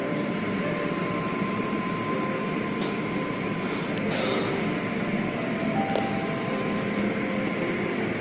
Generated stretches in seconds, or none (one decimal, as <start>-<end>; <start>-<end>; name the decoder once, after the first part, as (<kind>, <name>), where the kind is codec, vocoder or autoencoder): 0.0-2.3 (vocoder, BigVGAN v2)